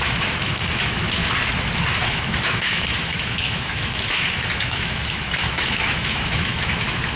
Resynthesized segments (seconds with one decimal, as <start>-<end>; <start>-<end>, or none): 0.0-1.2; 2.0-7.2